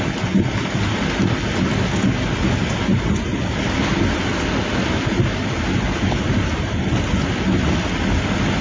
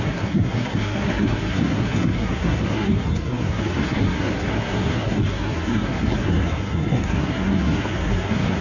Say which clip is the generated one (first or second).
second